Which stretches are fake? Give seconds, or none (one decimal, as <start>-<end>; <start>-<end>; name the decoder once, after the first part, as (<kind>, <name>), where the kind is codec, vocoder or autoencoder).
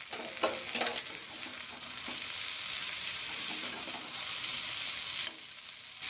1.2-1.8 (vocoder, BigVGAN v2); 2.8-4.2